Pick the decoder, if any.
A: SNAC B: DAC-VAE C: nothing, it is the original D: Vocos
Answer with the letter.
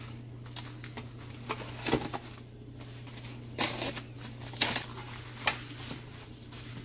C